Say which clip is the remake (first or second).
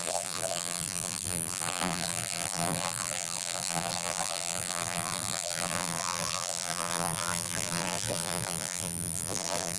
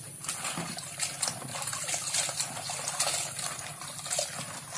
first